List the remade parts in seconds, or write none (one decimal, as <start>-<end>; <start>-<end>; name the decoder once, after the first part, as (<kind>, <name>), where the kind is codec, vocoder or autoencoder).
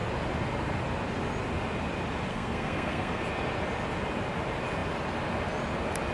2.3-3.2 (codec, SNAC)